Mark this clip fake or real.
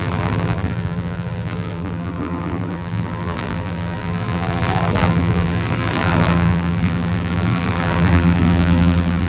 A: fake